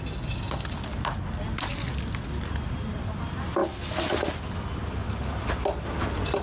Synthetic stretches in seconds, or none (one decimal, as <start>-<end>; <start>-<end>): none

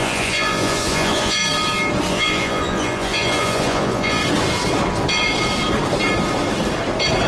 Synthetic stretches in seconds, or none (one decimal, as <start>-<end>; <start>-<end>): 0.0-1.4; 2.1-4.2

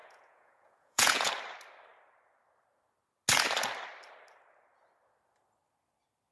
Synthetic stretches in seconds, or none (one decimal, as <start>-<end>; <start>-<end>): 0.0-1.3

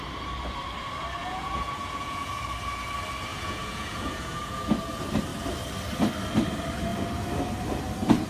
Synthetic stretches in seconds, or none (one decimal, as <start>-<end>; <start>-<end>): 1.2-2.4; 3.3-4.6

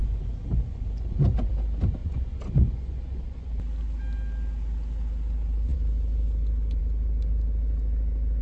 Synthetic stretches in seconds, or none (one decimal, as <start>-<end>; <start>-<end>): 0.0-1.5; 2.0-3.5

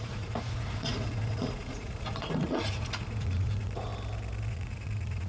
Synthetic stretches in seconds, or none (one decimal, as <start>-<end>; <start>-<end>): 0.0-3.9; 4.5-5.3

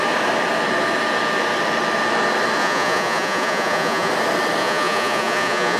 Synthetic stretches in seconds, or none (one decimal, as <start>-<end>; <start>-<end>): 2.6-4.1; 4.6-5.8

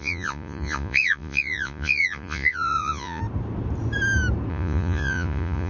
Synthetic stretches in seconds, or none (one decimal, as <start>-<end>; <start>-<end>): 0.0-3.2; 4.5-5.7